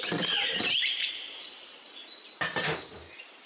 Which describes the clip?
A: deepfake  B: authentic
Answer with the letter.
B